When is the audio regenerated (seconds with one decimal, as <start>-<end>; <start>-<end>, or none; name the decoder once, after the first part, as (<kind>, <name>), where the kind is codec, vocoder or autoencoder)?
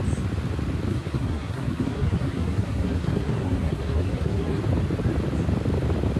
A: 0.9-4.6 (codec, SNAC)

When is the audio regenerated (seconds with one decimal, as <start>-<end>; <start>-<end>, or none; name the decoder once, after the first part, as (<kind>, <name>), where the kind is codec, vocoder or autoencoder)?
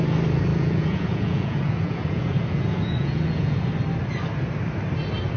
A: 0.5-3.7 (vocoder, Vocos)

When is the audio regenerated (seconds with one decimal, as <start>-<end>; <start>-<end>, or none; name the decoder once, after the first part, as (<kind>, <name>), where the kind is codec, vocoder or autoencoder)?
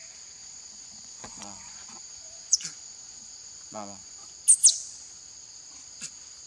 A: 0.4-4.3 (vocoder, Vocos)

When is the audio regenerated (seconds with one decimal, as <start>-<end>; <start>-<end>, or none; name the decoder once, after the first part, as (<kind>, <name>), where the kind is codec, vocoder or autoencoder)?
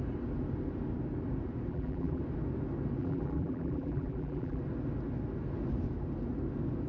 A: 1.7-2.2 (vocoder, BigVGAN v2); 3.0-4.6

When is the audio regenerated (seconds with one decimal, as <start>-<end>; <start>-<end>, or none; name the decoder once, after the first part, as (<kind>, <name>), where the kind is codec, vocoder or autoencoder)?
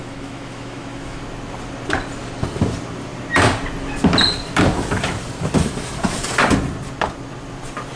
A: 0.0-1.2 (autoencoder, DAC-VAE)